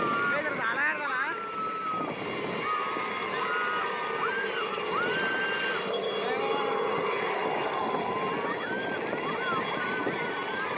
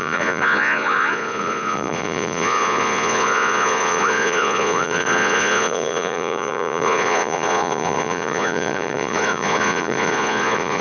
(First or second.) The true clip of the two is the first